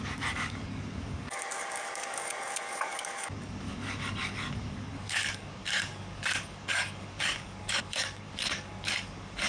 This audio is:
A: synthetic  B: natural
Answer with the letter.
A